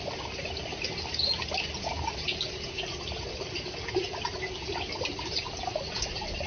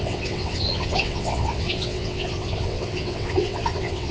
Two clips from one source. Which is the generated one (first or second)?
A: second